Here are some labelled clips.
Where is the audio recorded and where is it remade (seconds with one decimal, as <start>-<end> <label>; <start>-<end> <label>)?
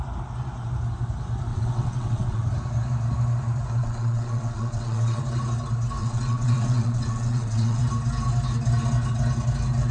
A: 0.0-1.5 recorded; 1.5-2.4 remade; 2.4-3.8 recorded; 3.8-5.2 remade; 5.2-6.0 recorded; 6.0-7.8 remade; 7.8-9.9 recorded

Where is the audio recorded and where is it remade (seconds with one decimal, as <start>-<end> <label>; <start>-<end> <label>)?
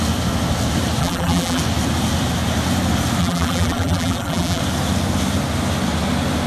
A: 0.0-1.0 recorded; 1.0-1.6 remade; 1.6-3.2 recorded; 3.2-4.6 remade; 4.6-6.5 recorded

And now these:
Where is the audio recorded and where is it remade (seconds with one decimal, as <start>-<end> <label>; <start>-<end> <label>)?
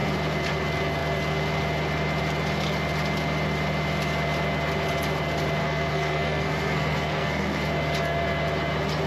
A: 0.0-5.6 recorded; 5.6-7.6 remade; 7.6-9.1 recorded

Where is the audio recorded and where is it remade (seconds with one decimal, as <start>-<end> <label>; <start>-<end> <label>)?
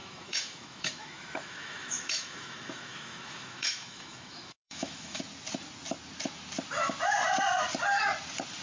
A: 0.0-5.2 remade; 5.2-8.6 recorded